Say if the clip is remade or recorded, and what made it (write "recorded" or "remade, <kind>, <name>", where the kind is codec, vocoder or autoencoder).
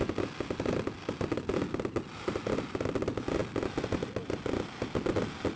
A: recorded